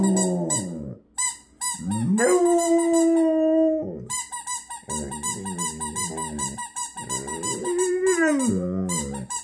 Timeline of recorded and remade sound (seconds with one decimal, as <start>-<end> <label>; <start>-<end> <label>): 0.0-9.4 recorded